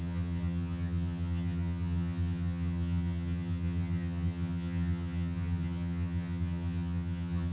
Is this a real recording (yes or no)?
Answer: no